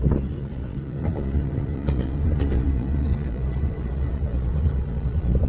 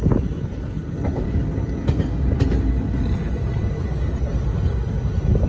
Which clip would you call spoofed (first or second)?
first